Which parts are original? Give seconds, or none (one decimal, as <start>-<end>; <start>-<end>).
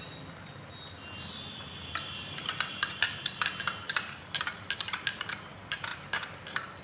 0.0-6.8